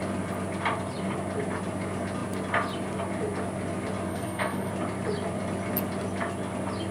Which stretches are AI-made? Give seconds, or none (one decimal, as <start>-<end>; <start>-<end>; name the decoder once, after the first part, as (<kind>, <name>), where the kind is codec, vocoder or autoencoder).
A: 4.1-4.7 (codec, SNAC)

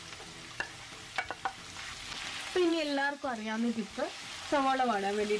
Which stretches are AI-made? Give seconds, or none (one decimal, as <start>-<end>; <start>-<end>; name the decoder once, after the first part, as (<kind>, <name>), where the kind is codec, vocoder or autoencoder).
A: 2.7-4.3 (codec, DAC)

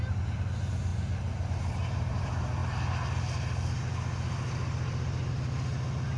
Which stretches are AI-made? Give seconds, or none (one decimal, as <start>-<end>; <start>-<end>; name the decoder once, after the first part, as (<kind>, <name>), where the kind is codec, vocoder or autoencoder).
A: none

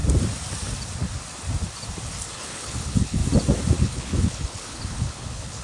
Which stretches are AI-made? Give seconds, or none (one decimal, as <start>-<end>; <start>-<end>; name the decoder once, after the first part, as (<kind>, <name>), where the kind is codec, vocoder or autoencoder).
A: 2.3-3.2 (codec, HILCodec); 3.8-5.6

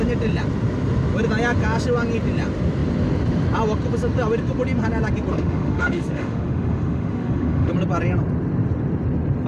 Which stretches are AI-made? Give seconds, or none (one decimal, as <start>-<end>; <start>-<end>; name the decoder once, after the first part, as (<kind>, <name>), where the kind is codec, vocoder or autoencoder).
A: 5.3-7.7 (autoencoder, DAC-VAE)

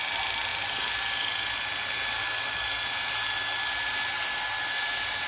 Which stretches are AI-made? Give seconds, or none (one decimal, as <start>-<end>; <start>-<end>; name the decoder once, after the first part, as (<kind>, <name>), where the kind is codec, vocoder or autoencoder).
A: none